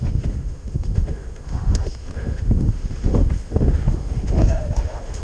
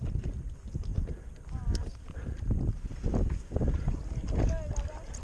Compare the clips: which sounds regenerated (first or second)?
first